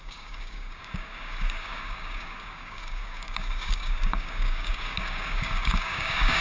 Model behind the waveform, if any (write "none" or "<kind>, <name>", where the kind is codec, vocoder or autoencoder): codec, DAC